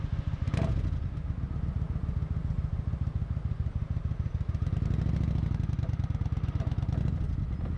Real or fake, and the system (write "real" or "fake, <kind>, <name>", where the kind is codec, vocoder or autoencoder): real